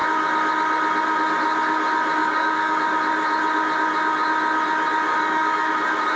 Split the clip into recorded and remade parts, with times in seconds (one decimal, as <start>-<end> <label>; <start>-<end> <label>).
0.0-2.2 recorded; 2.2-2.8 remade; 2.8-5.1 recorded; 5.1-5.7 remade; 5.7-6.2 recorded